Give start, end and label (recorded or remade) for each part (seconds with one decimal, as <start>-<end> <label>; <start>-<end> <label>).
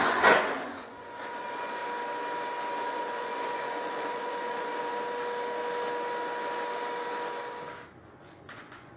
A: 0.0-1.8 remade; 1.8-2.8 recorded; 2.8-4.9 remade; 4.9-8.2 recorded; 8.2-9.0 remade